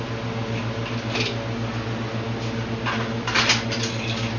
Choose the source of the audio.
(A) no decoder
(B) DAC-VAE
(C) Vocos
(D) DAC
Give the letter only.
A